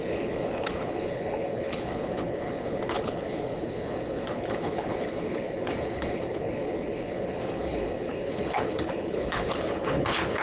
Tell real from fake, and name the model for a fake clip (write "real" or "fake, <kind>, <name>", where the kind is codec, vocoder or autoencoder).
fake, codec, HILCodec